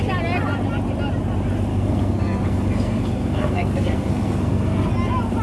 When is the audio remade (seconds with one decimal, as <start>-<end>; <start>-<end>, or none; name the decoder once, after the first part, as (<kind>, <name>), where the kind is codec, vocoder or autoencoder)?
1.7-4.9 (codec, SNAC)